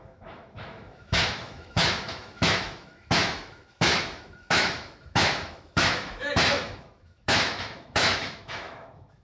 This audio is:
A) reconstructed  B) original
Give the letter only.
A